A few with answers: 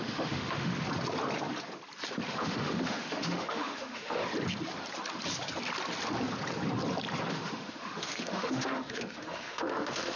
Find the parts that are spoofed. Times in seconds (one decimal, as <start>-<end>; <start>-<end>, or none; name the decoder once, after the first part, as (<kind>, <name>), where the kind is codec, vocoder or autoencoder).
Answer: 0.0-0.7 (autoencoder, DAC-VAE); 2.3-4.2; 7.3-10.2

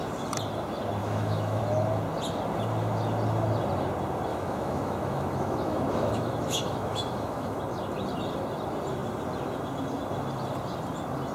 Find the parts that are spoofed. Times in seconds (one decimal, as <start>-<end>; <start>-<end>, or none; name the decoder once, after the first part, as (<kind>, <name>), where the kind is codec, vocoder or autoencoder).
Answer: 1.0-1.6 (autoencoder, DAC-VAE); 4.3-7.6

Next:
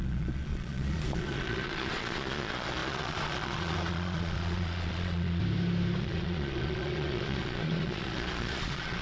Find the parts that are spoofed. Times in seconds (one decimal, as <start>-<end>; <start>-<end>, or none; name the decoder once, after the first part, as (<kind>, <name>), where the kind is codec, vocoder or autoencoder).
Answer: 0.0-5.4 (vocoder, Vocos); 6.0-9.0

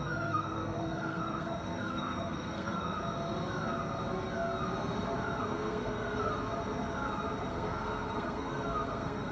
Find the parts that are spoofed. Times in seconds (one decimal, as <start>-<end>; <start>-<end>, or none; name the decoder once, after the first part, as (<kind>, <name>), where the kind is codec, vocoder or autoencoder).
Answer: 0.0-3.0 (codec, SNAC); 5.4-6.3; 7.5-9.3